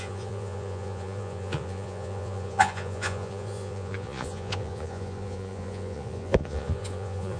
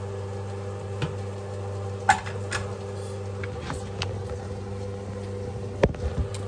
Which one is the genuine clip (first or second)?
second